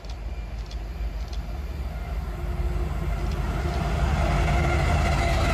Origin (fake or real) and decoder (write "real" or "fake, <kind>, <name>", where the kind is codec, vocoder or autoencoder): real